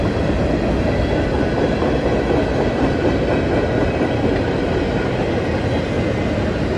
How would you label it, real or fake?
real